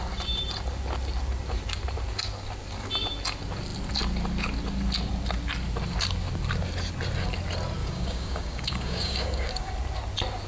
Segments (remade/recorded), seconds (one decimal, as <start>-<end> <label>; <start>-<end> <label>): 0.0-7.8 recorded; 7.8-9.7 remade; 9.7-10.5 recorded